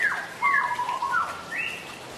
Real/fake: real